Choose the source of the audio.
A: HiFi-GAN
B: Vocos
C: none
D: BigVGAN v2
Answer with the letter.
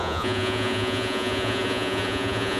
B